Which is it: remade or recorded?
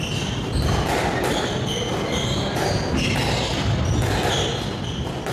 recorded